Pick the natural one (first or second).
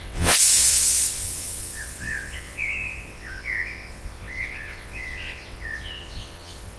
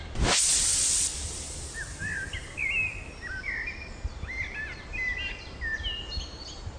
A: second